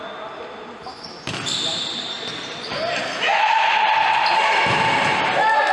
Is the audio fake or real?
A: real